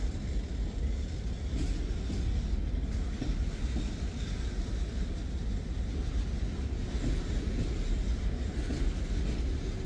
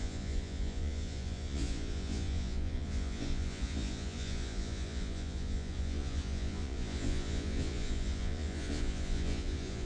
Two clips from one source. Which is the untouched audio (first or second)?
first